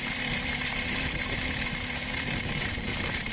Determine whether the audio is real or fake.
fake